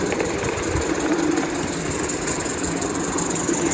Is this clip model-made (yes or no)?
no